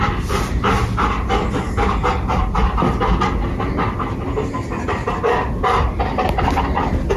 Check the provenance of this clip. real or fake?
real